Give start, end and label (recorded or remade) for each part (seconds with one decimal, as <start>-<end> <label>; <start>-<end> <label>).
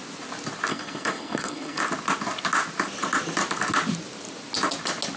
0.0-0.7 recorded; 0.7-1.8 remade; 1.8-5.2 recorded